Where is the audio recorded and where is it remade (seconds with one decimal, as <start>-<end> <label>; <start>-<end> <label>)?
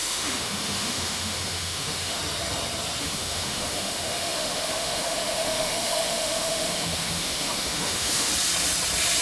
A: 0.0-2.2 remade; 2.2-3.0 recorded; 3.0-8.3 remade; 8.3-9.2 recorded